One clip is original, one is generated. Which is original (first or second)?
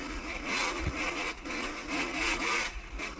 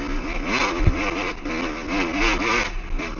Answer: second